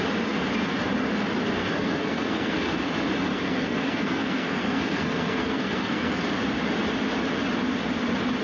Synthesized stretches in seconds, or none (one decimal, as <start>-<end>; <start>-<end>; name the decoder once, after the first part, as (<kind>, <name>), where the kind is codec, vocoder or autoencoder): 1.6-2.9 (codec, SNAC); 3.3-6.2